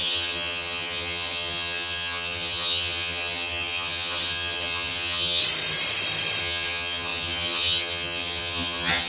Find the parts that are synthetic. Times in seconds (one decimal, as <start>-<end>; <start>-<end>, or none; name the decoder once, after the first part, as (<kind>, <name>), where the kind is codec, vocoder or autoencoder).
0.0-5.4 (vocoder, HiFi-GAN); 6.4-9.1